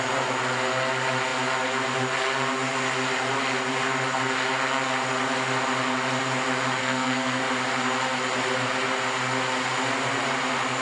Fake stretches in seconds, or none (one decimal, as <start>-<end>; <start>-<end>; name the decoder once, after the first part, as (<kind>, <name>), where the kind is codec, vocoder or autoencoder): 6.8-7.4 (codec, SNAC)